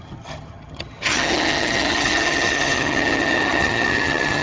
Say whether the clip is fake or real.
fake